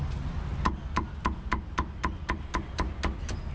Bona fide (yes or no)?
yes